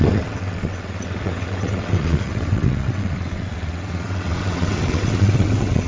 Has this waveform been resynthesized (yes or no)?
yes